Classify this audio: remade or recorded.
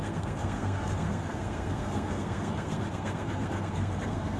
remade